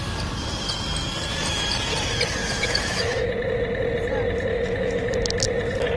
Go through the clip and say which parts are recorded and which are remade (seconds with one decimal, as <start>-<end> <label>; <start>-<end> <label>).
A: 0.0-2.4 recorded; 2.4-3.3 remade; 3.3-4.5 recorded; 4.5-5.1 remade; 5.1-6.0 recorded